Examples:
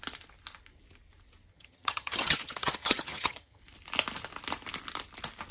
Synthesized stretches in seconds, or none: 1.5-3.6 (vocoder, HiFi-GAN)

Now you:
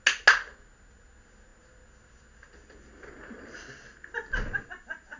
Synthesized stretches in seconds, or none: none

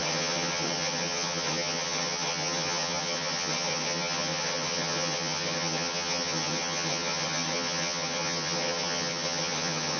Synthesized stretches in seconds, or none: 0.0-10.0 (vocoder, HiFi-GAN)

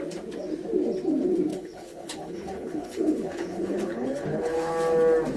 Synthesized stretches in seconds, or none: 1.5-4.7 (codec, HILCodec)

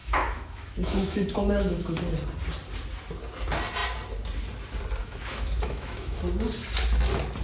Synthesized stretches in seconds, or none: 0.0-2.0 (autoencoder, DAC-VAE); 5.0-6.2

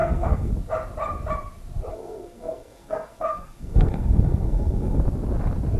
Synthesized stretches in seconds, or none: 0.0-0.5 (codec, SNAC); 1.9-5.0

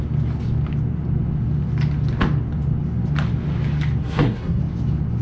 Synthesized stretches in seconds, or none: 4.0-4.6 (codec, SNAC)

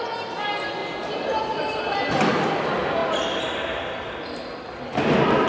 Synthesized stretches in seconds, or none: none